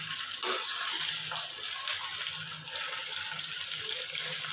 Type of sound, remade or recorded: recorded